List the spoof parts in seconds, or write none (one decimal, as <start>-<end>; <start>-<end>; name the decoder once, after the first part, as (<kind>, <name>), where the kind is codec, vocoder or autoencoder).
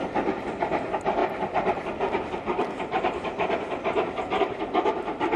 none